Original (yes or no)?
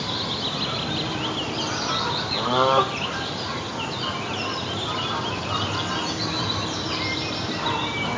yes